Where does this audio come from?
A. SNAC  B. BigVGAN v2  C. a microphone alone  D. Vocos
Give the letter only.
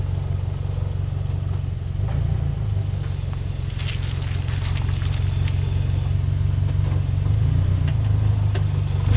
C